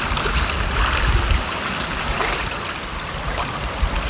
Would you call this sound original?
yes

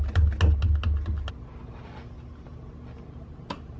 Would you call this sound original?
yes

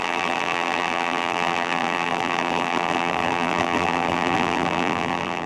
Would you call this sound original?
no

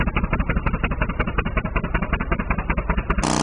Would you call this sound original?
yes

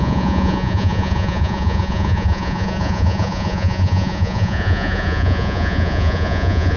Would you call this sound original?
no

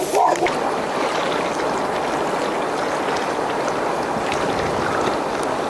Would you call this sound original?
yes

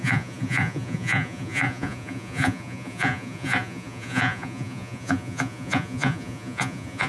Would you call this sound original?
no